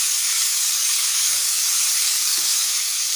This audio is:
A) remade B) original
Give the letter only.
A